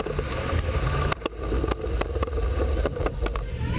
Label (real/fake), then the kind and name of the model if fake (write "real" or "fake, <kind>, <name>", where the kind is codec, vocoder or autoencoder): real